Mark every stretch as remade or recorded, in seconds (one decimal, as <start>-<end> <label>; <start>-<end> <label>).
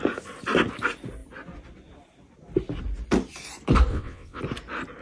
0.0-3.9 recorded; 3.9-4.4 remade; 4.4-5.0 recorded